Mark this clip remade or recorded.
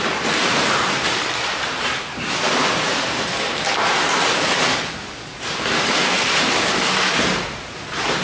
remade